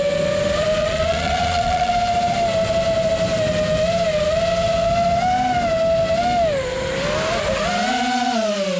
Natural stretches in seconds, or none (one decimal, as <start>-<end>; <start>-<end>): 0.0-0.8; 1.9-8.8